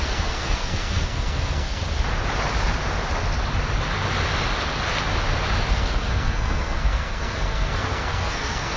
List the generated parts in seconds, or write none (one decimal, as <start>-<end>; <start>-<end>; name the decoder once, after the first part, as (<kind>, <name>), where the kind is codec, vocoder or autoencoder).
0.0-1.8 (codec, SNAC); 5.7-8.8